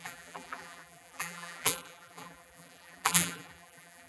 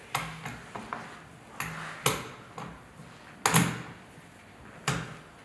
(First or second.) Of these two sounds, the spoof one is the first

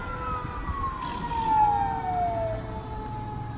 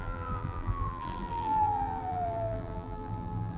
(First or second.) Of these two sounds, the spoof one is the second